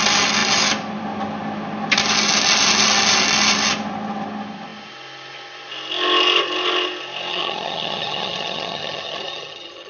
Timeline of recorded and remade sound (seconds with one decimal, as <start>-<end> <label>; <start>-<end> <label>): 0.0-7.3 recorded; 7.3-9.9 remade